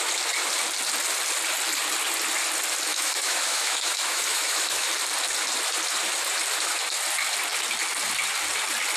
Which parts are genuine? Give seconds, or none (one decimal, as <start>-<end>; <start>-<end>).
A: 0.0-2.9; 4.9-9.0